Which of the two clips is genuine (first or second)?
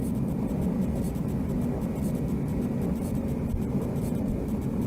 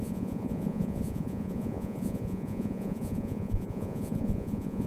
first